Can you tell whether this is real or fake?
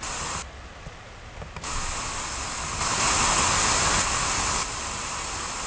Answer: real